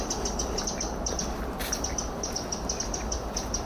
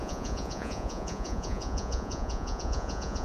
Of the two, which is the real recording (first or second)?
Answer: first